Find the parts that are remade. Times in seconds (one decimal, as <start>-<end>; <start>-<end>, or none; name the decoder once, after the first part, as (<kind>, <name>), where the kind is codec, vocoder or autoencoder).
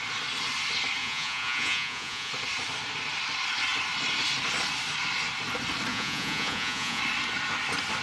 1.0-2.3 (vocoder, Vocos); 5.9-7.0